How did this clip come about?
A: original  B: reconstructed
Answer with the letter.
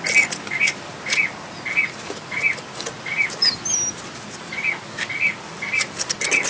A